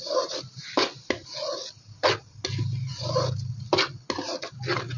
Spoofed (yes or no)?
no